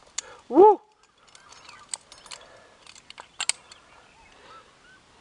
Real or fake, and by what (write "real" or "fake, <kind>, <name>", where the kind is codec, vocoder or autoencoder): real